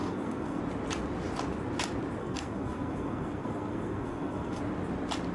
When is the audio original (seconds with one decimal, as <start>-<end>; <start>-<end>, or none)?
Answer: 0.6-2.2; 4.6-5.3